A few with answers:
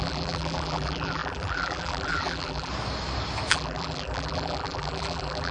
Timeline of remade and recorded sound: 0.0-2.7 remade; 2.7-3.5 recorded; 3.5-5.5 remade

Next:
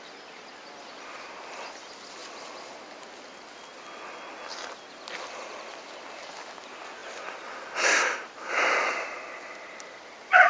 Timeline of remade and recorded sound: 0.0-2.2 remade; 2.2-5.8 recorded; 5.8-7.0 remade; 7.0-7.9 recorded; 7.9-10.5 remade

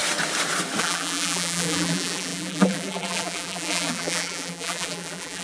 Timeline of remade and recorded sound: 0.0-0.8 recorded; 0.8-5.4 remade

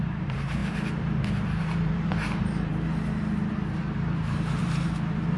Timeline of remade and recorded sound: 0.0-2.7 remade; 2.7-3.5 recorded; 3.5-5.4 remade

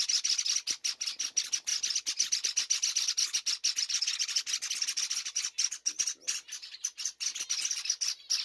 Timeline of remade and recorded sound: 0.0-8.4 recorded

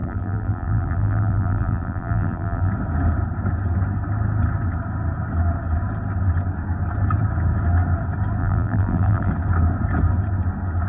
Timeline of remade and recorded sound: 0.0-2.7 remade; 2.7-8.4 recorded; 8.4-9.3 remade; 9.3-10.9 recorded

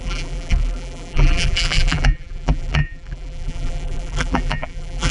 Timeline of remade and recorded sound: 0.0-5.1 remade